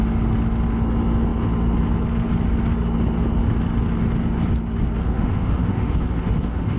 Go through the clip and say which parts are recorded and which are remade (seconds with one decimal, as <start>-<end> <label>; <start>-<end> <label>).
0.0-5.0 recorded; 5.0-6.8 remade